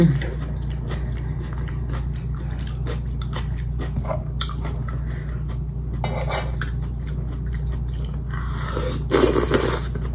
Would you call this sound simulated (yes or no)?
no